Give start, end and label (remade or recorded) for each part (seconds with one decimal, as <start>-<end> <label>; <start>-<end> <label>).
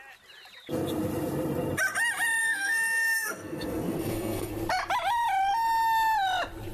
0.0-2.4 recorded; 2.4-4.5 remade; 4.5-6.7 recorded